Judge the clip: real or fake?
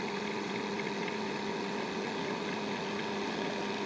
real